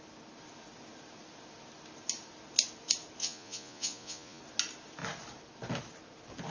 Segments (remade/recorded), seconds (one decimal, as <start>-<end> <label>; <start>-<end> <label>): 0.0-3.2 recorded; 3.2-4.4 remade; 4.4-6.5 recorded